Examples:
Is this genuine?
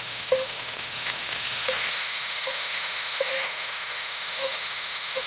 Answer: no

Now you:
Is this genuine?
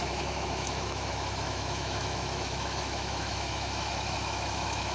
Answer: no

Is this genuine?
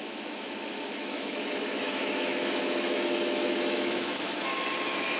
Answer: no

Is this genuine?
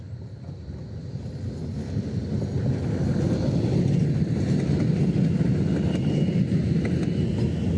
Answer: yes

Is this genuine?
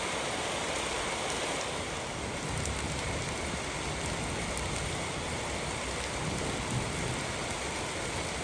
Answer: yes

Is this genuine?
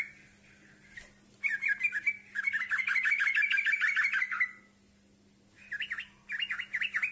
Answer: yes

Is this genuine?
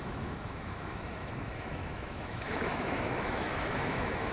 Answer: no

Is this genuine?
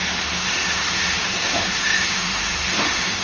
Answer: no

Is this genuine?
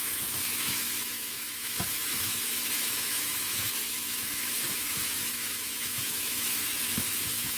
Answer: no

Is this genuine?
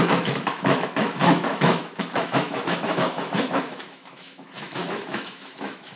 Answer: no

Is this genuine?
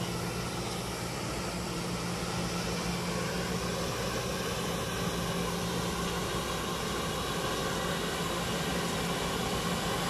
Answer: yes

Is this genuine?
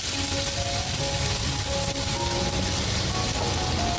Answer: yes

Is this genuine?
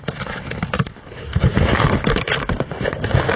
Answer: yes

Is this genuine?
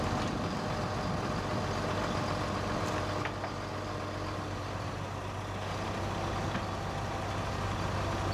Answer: yes